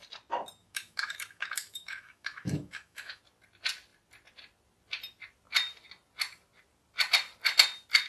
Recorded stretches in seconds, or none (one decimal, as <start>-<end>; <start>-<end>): 0.0-0.6; 3.2-8.1

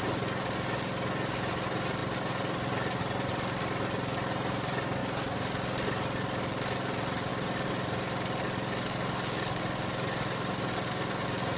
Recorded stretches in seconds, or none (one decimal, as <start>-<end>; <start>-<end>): 0.0-11.6

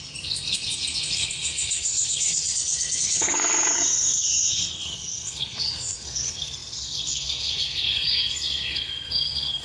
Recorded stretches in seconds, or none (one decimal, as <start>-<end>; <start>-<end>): none

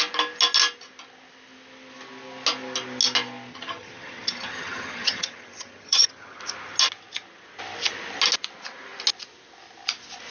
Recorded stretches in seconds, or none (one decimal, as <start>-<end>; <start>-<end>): 0.0-3.5; 6.4-10.3